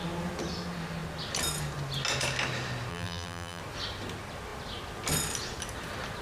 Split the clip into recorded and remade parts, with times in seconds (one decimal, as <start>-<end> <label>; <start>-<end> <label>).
0.0-2.9 recorded; 2.9-3.6 remade; 3.6-6.2 recorded